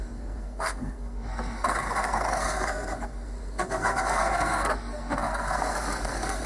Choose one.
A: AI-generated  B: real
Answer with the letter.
A